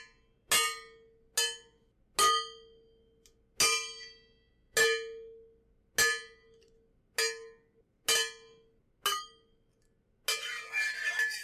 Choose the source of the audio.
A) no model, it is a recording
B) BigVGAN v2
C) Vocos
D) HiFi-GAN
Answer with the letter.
A